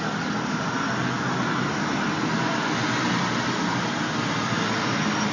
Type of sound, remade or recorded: recorded